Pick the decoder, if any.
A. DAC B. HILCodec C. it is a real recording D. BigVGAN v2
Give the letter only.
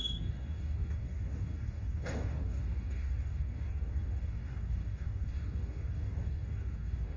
A